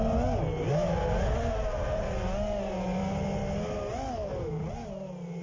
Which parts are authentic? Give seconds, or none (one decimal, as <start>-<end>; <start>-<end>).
0.0-5.4